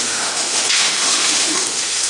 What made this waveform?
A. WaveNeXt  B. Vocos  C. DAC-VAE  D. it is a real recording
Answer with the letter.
C